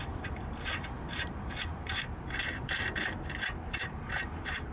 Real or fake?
fake